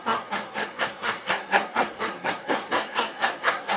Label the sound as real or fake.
fake